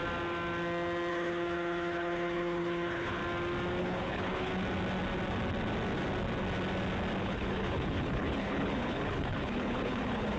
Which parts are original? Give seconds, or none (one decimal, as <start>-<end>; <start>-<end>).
0.0-1.1; 3.2-3.8; 4.5-7.2